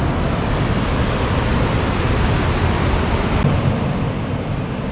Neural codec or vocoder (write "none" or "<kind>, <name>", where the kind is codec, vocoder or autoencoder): none